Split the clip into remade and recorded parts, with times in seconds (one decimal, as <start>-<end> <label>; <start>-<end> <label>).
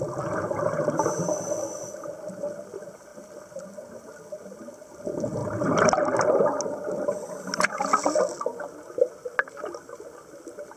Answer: 0.0-10.8 recorded